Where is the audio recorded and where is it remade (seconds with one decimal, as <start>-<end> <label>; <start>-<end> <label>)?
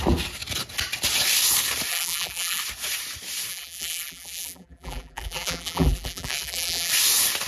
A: 0.0-1.9 recorded; 1.9-2.6 remade; 2.6-3.5 recorded; 3.5-6.9 remade; 6.9-7.5 recorded